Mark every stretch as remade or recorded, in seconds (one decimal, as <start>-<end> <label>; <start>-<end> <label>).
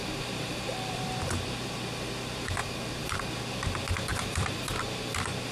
0.0-1.0 remade; 1.0-2.6 recorded; 2.6-3.3 remade; 3.3-4.1 recorded; 4.1-4.7 remade; 4.7-5.5 recorded